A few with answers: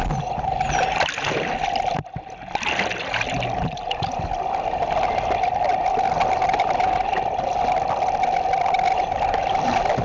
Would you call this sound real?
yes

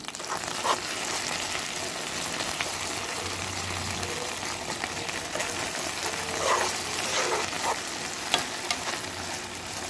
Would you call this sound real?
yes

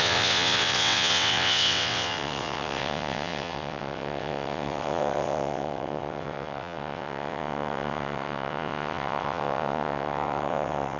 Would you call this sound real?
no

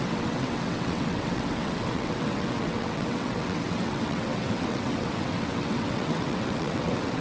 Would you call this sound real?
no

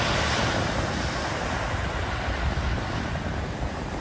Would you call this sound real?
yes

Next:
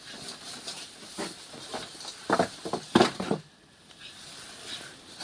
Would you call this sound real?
yes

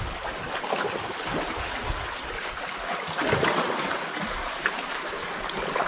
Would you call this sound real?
yes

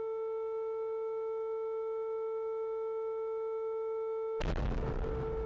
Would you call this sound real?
yes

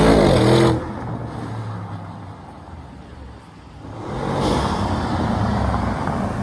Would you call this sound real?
yes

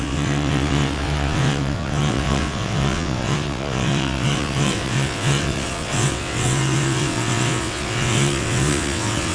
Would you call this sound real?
no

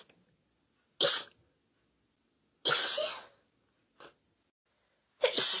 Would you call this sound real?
yes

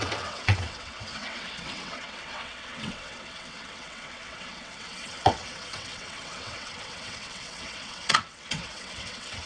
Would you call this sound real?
no